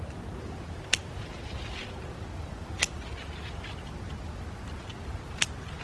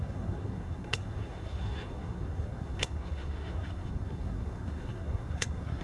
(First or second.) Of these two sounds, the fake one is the second